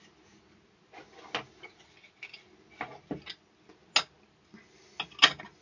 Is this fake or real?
real